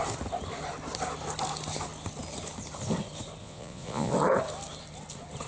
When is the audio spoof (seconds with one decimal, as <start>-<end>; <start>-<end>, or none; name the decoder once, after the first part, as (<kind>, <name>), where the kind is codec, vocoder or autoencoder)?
3.4-4.1 (vocoder, Vocos)